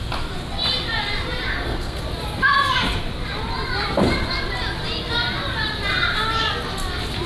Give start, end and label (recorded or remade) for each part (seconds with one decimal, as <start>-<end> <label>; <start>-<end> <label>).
0.0-1.5 recorded; 1.5-2.0 remade; 2.0-7.3 recorded